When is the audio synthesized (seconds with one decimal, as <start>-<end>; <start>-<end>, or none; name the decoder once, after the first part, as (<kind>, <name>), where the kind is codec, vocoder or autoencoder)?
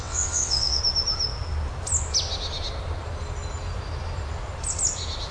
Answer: 0.0-0.8 (vocoder, WaveNeXt)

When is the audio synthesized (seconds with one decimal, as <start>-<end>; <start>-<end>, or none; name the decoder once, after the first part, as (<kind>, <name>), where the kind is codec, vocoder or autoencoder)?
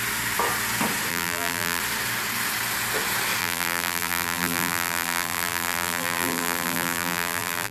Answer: 1.1-1.8 (vocoder, BigVGAN v2); 3.4-7.7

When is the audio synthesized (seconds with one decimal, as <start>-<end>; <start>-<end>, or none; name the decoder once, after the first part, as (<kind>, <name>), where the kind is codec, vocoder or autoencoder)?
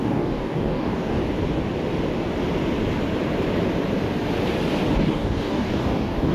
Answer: 0.0-1.2 (codec, DAC); 5.0-6.3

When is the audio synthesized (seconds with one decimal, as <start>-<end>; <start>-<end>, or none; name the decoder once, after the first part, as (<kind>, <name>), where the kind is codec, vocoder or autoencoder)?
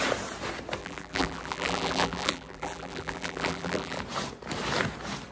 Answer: 0.8-4.0 (vocoder, BigVGAN v2)